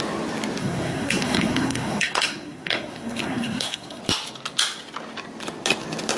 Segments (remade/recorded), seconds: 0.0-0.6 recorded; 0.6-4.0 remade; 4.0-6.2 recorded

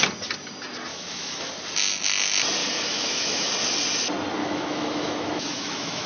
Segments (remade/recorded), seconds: 0.0-0.9 recorded; 0.9-1.5 remade; 1.5-2.6 recorded; 2.6-3.5 remade; 3.5-4.4 recorded; 4.4-6.1 remade

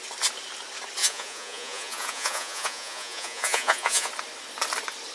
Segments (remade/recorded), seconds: 0.0-1.0 recorded; 1.0-4.1 remade; 4.1-5.1 recorded